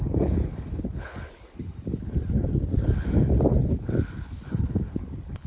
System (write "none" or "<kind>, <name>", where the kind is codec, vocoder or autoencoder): codec, HILCodec